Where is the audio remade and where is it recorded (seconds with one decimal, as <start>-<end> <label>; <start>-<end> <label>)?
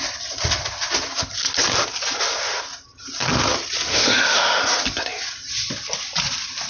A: 0.0-3.9 recorded; 3.9-4.6 remade; 4.6-6.7 recorded